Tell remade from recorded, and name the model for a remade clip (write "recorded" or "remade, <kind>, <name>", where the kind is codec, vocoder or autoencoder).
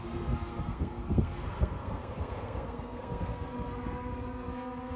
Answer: remade, codec, SNAC